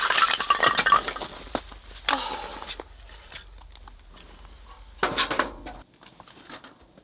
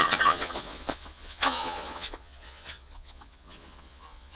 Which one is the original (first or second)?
first